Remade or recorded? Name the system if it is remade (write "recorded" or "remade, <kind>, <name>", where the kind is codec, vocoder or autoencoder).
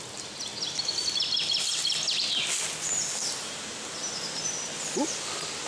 recorded